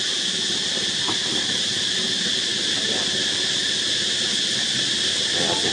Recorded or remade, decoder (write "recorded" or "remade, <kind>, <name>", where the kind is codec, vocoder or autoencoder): recorded